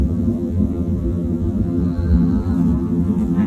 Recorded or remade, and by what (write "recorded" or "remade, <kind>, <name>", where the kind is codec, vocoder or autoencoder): remade, vocoder, BigVGAN v2